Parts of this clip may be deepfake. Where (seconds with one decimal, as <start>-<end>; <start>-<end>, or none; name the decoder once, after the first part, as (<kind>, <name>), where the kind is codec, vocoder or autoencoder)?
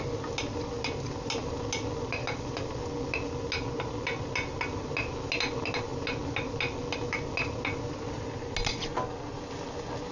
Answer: none